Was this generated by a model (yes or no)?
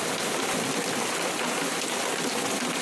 no